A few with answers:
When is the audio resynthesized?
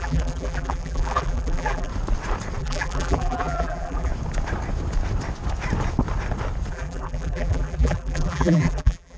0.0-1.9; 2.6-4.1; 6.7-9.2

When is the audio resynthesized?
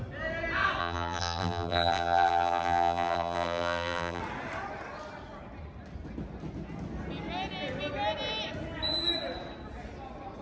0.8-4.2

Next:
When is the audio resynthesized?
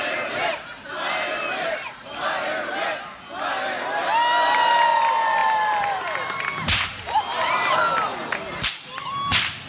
0.0-2.7; 5.4-7.8; 8.2-8.9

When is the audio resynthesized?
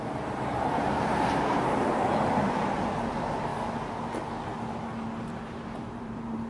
0.0-3.5; 5.3-6.5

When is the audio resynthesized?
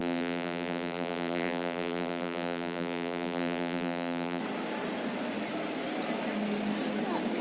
0.0-4.4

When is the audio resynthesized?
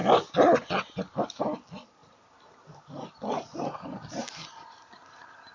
none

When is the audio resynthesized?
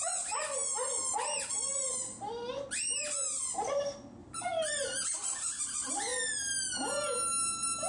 4.2-4.7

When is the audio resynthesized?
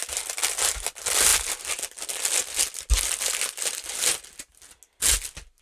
none